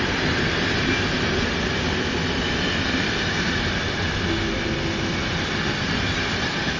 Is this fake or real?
real